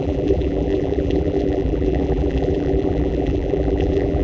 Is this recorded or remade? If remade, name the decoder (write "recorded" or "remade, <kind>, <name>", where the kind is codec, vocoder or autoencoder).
remade, vocoder, BigVGAN v2